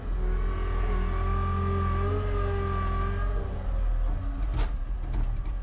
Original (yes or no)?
yes